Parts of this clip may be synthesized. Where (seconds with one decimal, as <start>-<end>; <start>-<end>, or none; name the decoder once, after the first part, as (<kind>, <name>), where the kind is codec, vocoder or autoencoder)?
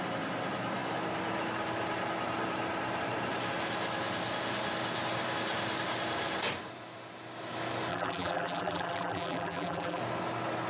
7.9-10.0 (vocoder, BigVGAN v2)